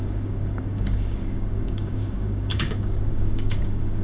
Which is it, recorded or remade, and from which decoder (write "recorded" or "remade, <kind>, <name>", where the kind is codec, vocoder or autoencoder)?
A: remade, codec, DAC